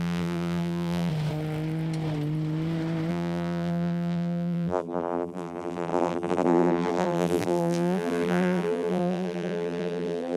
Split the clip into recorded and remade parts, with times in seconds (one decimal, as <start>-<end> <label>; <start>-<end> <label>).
0.0-1.1 remade; 1.1-3.1 recorded; 3.1-10.4 remade